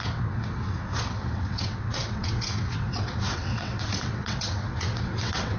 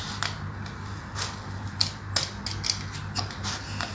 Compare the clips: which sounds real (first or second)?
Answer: second